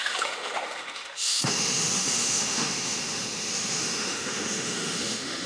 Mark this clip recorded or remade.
remade